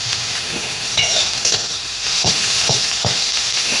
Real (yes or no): no